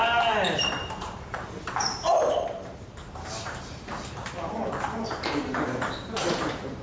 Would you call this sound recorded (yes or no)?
no